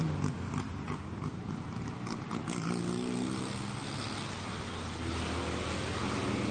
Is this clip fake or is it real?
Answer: real